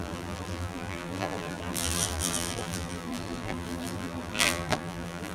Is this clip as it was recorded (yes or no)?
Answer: no